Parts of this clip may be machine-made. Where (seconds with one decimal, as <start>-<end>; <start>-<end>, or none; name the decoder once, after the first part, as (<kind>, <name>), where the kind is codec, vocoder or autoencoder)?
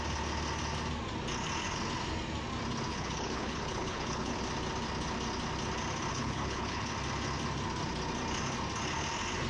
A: 2.9-4.4 (codec, HILCodec); 6.1-6.9